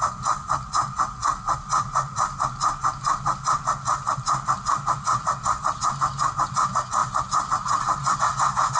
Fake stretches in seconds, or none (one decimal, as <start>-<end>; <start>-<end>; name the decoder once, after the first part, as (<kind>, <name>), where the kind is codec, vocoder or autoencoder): 1.2-5.9 (vocoder, BigVGAN v2); 7.0-8.2